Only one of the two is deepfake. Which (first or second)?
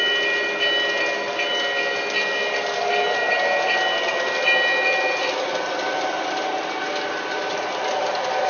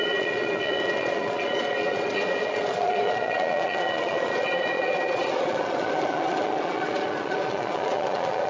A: second